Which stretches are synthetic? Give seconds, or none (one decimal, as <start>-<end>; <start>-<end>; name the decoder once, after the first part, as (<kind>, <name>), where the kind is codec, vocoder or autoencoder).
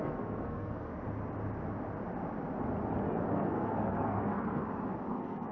0.0-0.9 (codec, SNAC); 3.3-4.6; 5.1-5.5